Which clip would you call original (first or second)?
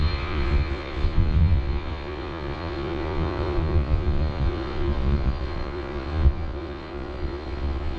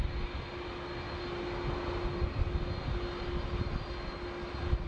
second